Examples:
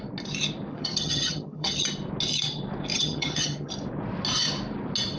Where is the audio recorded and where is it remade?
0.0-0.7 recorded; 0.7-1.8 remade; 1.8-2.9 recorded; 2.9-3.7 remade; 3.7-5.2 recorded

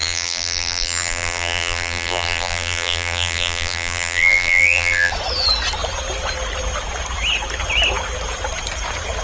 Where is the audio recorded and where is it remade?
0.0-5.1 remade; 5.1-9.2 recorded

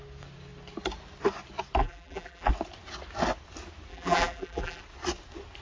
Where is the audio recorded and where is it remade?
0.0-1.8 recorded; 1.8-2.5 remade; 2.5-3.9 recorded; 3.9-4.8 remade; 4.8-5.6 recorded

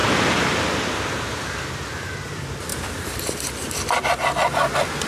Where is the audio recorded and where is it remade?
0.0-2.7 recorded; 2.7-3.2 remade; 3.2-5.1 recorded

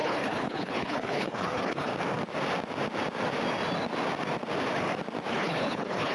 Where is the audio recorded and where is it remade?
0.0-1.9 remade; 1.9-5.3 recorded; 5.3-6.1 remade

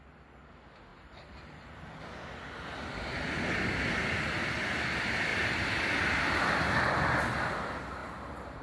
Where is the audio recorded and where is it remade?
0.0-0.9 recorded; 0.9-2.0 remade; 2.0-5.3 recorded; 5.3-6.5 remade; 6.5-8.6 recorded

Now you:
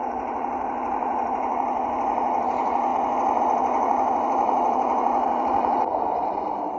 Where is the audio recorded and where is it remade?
0.0-2.9 remade; 2.9-3.4 recorded; 3.4-6.8 remade